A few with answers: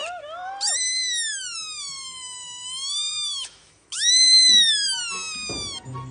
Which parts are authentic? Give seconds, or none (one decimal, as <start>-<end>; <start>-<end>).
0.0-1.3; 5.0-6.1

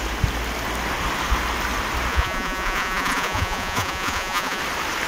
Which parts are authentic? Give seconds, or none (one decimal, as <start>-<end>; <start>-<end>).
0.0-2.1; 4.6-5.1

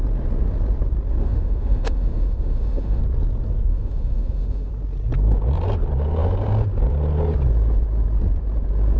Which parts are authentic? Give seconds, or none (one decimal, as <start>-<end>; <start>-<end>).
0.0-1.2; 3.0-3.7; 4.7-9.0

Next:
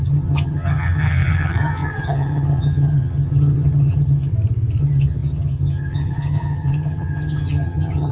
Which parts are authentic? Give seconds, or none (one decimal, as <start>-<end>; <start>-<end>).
4.3-4.8

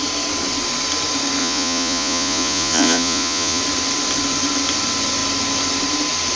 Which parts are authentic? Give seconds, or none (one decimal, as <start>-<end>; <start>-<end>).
0.0-1.4; 3.6-6.4